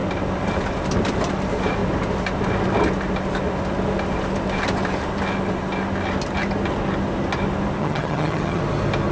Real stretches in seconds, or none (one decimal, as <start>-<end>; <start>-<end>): 0.0-7.8; 8.6-9.1